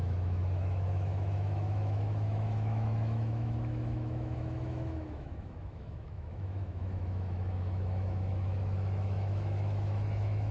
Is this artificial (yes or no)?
yes